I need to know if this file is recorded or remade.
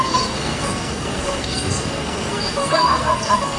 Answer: remade